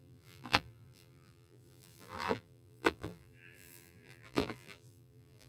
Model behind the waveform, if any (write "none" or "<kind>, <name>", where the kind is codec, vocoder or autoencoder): vocoder, BigVGAN v2